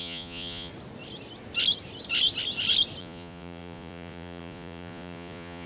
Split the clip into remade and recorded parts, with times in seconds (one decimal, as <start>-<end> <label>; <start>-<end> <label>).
0.0-0.7 remade; 0.7-3.0 recorded; 3.0-5.7 remade